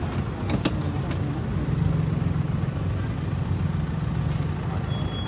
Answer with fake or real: real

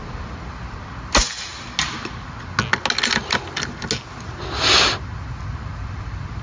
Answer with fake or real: real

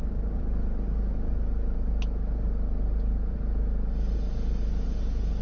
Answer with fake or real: real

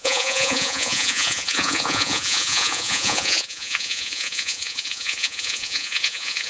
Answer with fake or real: fake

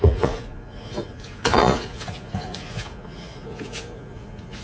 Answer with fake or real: fake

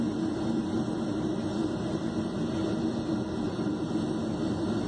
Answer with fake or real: real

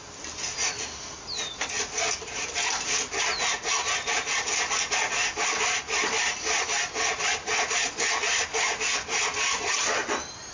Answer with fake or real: real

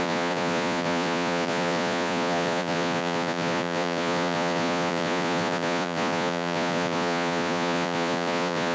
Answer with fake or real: fake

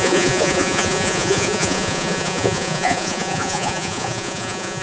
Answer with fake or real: fake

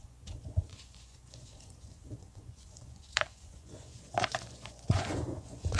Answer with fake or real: fake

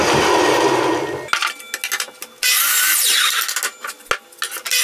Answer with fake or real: real